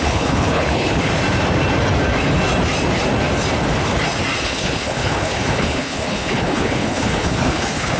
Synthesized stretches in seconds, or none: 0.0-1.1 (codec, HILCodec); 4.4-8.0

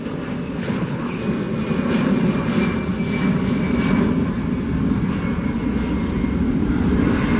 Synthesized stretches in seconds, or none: 0.6-1.2 (codec, HILCodec)

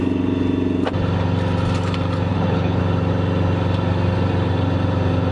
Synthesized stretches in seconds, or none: 2.3-2.8 (codec, HILCodec)

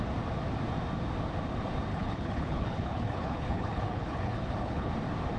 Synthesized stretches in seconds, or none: 1.9-4.9 (codec, HILCodec)